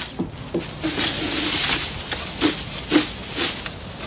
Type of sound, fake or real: real